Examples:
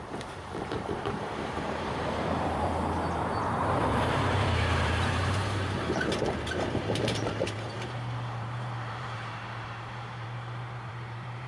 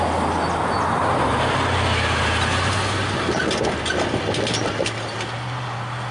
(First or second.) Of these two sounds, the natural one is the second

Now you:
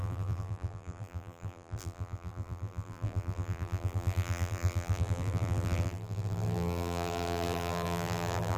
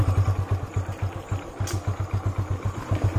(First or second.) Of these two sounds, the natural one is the second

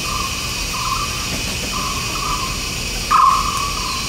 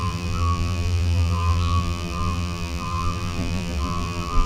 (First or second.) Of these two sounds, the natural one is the first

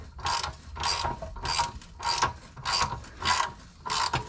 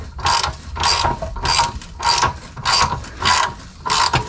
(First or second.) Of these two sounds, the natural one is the first